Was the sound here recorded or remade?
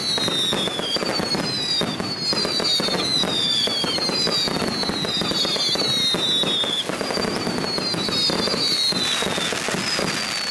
recorded